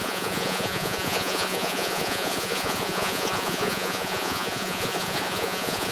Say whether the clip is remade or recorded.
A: remade